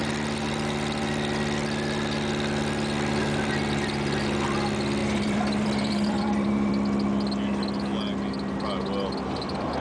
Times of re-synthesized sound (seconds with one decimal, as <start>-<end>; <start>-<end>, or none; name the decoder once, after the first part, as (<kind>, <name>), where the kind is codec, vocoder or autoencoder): 5.0-6.7 (vocoder, BigVGAN v2)